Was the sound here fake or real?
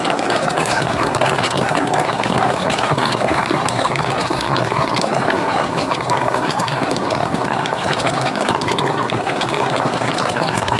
fake